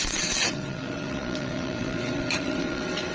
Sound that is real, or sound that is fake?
fake